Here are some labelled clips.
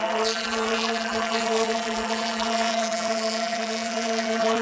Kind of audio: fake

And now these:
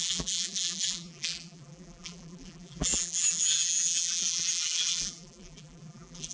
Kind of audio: fake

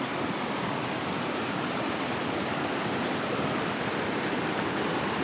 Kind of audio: real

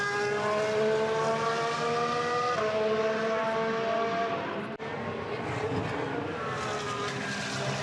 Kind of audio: real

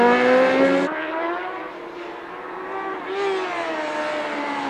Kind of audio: real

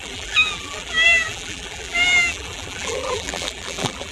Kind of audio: fake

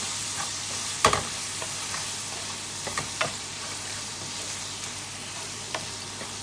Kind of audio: fake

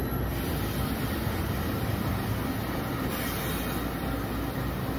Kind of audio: real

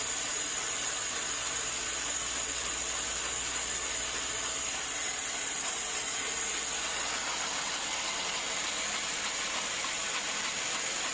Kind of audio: fake